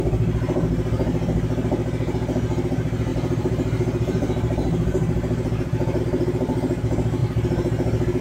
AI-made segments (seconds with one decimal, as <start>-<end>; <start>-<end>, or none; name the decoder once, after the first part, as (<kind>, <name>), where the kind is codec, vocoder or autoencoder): 3.1-6.0 (vocoder, BigVGAN v2)